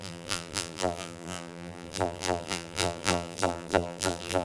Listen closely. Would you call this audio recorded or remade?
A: remade